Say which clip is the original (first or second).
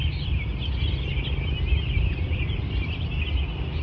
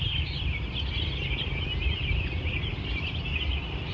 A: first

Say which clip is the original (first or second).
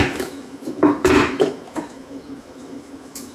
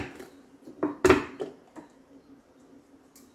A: second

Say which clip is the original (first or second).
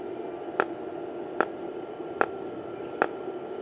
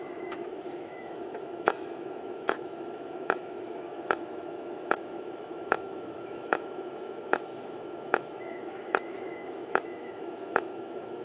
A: first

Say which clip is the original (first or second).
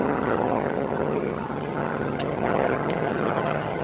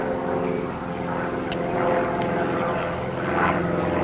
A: second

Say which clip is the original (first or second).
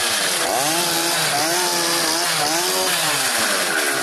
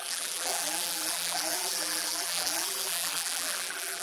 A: first